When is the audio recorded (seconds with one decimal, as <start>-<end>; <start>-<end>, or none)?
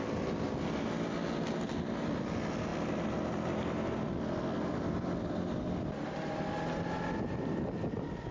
0.0-8.3